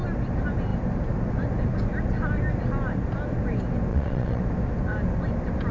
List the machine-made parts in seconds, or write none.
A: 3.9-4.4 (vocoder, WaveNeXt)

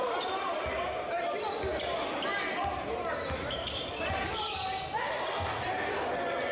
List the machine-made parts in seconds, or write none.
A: none

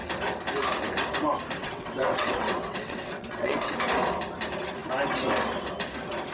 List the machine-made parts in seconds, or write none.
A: 1.6-3.7 (vocoder, WaveNeXt)

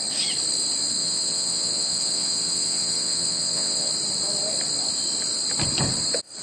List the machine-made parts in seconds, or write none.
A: 1.0-3.9 (vocoder, WaveNeXt)